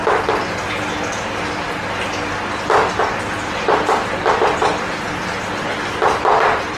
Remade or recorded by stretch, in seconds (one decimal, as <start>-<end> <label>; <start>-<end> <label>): 0.0-6.8 recorded